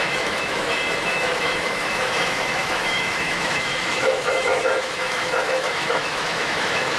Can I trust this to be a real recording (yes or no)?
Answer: no